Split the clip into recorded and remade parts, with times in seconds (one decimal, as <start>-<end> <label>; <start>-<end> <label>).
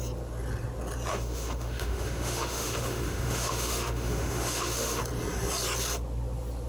0.0-1.1 recorded; 1.1-5.0 remade; 5.0-6.7 recorded